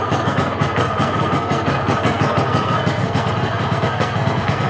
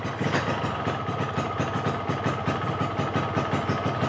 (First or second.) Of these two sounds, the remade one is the first